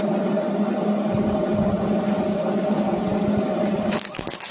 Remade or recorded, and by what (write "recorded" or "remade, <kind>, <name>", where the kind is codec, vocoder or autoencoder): recorded